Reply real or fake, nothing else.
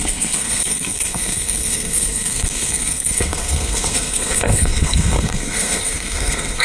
fake